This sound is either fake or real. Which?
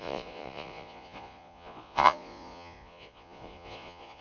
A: fake